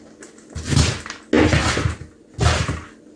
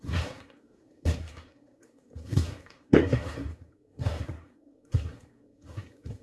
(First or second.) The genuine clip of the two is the first